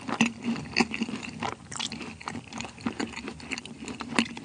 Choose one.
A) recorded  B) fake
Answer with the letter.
A